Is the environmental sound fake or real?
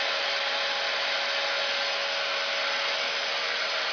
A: real